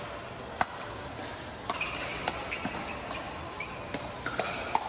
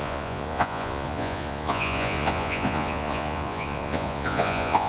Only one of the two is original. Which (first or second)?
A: first